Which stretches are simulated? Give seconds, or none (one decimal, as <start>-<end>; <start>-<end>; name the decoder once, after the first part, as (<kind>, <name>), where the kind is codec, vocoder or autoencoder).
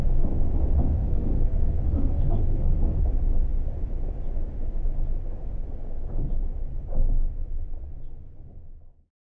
1.0-3.0 (codec, SNAC)